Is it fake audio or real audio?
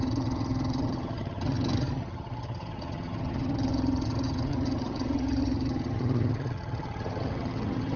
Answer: fake